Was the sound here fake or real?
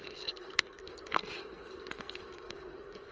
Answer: fake